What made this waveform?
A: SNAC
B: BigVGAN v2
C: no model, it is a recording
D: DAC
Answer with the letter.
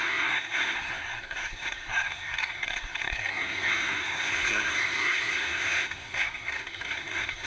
A